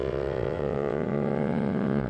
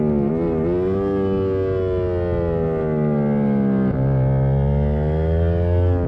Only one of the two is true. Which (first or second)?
second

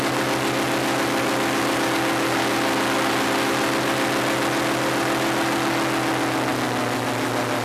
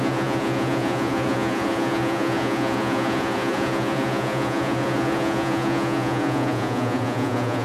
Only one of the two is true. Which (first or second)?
first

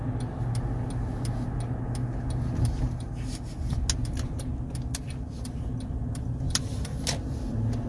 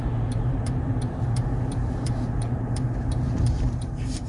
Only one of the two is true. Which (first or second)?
first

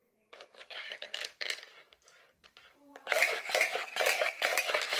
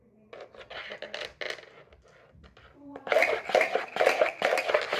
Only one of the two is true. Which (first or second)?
second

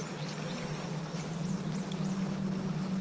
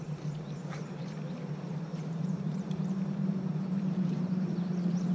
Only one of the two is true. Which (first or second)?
first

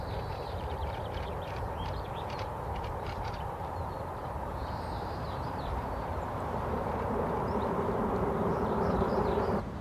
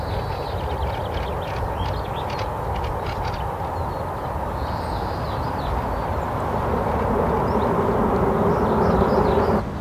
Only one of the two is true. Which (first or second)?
second